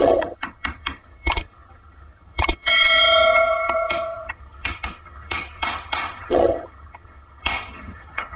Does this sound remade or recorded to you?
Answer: remade